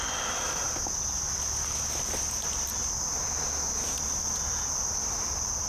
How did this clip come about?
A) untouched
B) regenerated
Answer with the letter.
A